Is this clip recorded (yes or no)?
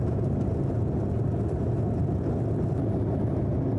yes